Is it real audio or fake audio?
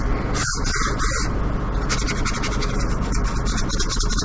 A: real